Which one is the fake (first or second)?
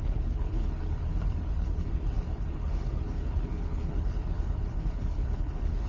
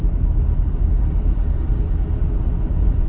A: first